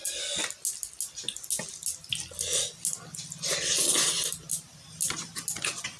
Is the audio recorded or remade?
recorded